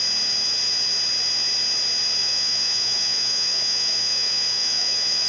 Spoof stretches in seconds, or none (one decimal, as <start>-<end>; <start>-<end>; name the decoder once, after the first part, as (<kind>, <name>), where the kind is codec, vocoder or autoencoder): 2.2-5.3 (autoencoder, DAC-VAE)